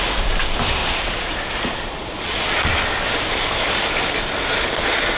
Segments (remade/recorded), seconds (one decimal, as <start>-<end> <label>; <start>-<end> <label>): 0.0-0.8 recorded; 0.8-2.7 remade; 2.7-5.2 recorded